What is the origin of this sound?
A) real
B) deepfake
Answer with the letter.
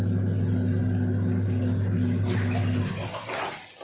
A